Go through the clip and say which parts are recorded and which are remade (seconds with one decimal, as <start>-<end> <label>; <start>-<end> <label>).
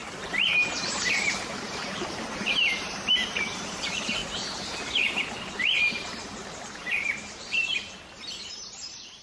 0.0-4.2 remade; 4.2-8.5 recorded; 8.5-9.2 remade